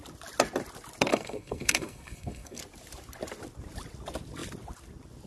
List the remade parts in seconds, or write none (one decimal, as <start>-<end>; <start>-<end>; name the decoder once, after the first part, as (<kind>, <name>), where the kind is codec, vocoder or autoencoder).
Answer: 1.1-2.6 (codec, SNAC)